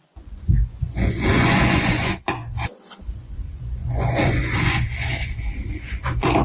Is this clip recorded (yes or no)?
no